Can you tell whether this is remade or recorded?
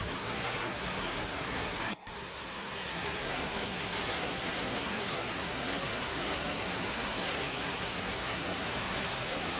remade